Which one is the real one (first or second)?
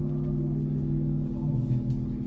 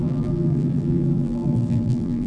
first